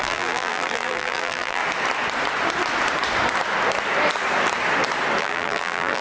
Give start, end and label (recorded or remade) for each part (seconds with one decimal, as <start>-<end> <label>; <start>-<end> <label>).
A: 0.0-1.6 remade; 1.6-5.2 recorded; 5.2-6.0 remade